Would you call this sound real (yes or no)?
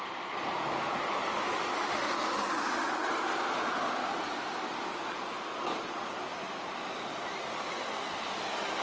yes